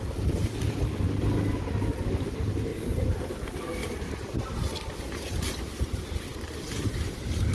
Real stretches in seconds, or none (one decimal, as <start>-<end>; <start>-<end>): 0.0-2.7; 3.3-3.8; 4.9-7.5